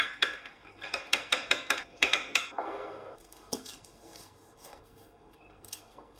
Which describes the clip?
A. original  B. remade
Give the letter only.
B